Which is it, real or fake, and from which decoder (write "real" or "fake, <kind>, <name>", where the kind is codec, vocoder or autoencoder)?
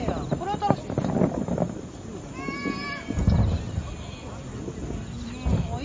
real